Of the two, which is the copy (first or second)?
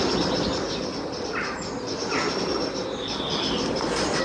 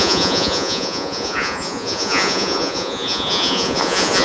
second